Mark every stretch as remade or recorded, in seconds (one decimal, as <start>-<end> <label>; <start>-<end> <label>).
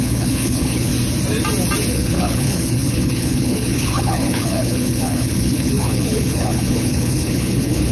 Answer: 0.0-0.9 remade; 0.9-1.9 recorded; 1.9-7.9 remade